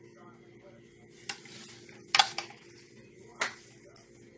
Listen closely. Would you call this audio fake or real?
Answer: real